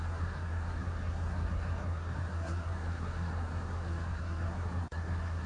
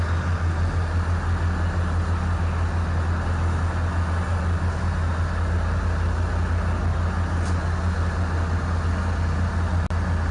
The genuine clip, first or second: second